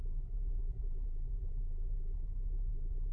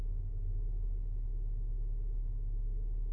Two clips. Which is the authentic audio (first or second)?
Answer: second